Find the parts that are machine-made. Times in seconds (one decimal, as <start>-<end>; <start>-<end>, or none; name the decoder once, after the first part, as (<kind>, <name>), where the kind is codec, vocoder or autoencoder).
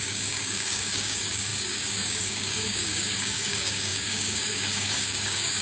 0.0-5.6 (codec, DAC)